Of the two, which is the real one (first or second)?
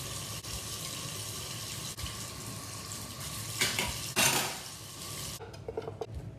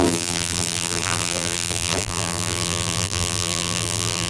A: first